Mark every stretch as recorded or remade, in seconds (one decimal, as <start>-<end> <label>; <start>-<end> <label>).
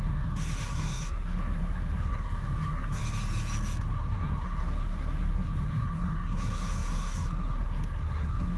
0.0-3.0 remade; 3.0-3.8 recorded; 3.8-8.6 remade